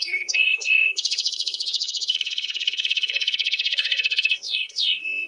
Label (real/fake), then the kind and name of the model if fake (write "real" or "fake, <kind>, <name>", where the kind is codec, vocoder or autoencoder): fake, codec, SNAC